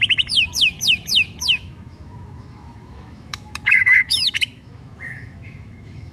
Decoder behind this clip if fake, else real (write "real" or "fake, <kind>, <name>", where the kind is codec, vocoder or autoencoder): fake, autoencoder, DAC-VAE